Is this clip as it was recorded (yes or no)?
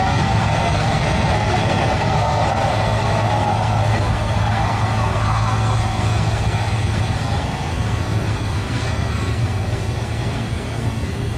no